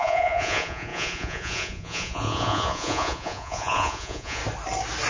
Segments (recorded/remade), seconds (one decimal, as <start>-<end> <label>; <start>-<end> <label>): 0.0-4.4 remade; 4.4-5.1 recorded